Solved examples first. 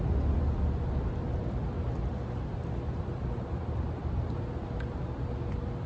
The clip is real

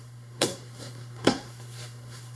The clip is fake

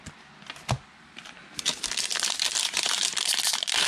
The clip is real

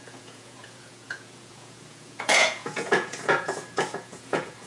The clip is fake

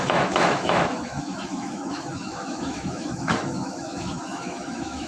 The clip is fake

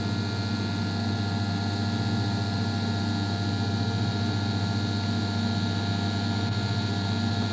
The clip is real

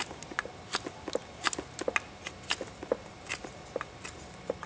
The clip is real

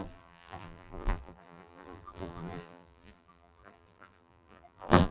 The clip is fake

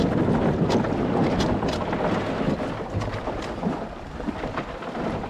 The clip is real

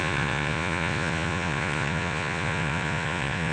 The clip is fake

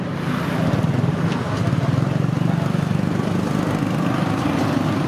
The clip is real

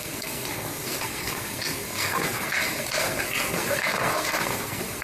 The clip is fake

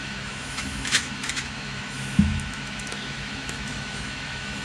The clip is fake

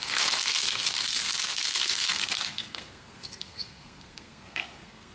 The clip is fake